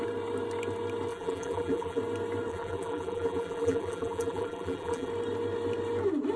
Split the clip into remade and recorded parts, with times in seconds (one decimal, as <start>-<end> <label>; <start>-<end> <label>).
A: 0.0-1.1 recorded; 1.1-2.0 remade; 2.0-2.5 recorded; 2.5-5.1 remade; 5.1-6.4 recorded